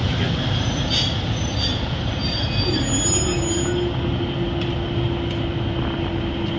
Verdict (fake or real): real